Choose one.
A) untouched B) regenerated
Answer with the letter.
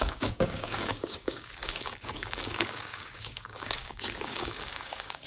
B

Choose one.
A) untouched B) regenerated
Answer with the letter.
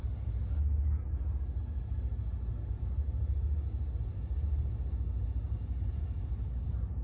A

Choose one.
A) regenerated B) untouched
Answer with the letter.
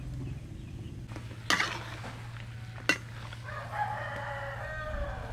B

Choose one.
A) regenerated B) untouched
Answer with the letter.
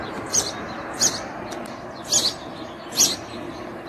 B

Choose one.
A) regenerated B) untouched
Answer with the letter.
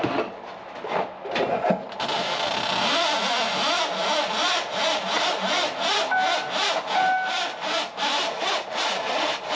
B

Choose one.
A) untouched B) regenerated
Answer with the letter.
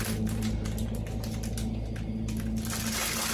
A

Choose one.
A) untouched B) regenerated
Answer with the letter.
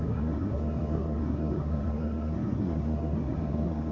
B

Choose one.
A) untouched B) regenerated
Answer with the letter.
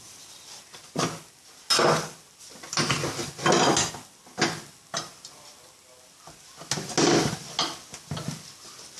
A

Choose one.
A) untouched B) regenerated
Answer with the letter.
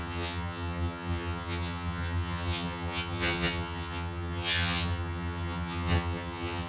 B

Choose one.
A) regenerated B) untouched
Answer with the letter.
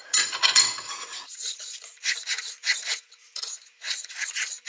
A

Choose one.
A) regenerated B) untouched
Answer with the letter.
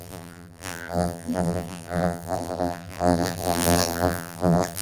A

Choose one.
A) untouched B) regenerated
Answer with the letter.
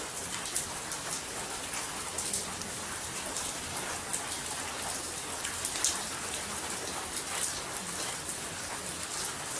A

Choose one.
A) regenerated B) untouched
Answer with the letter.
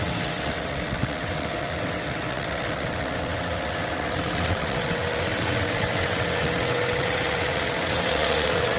A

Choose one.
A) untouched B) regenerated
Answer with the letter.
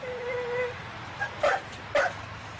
A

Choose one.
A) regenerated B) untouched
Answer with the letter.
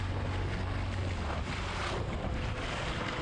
B